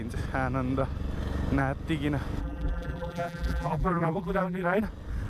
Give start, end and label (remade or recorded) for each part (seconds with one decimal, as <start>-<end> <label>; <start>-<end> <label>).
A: 0.0-2.4 recorded; 2.4-4.8 remade; 4.8-5.3 recorded